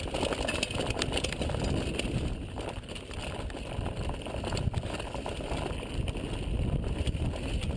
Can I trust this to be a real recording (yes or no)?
yes